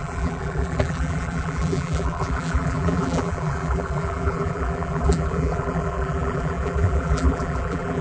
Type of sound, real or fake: fake